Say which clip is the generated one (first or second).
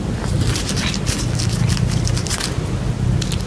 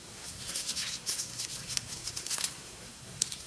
second